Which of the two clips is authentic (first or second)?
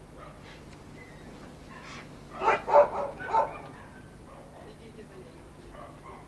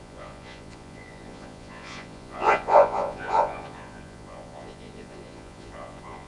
first